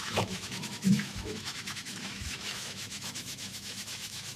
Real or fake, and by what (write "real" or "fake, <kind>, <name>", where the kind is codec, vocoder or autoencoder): fake, autoencoder, DAC-VAE